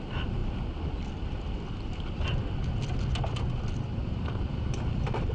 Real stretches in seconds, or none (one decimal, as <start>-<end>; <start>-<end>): 0.4-3.6; 4.0-4.5